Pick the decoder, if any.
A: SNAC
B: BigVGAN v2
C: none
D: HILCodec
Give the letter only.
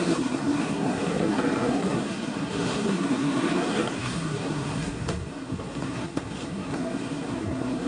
A